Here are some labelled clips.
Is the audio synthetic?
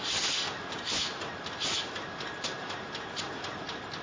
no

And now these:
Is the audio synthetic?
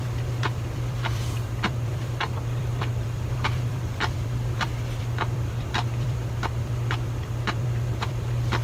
yes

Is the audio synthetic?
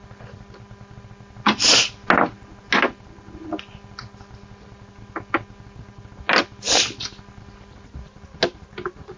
no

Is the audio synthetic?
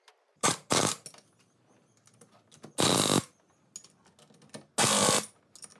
no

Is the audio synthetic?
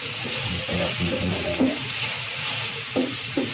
yes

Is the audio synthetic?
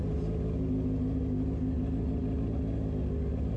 no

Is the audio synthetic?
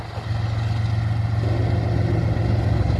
no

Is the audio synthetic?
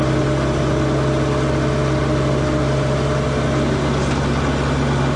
no